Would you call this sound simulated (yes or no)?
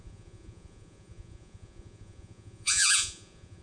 yes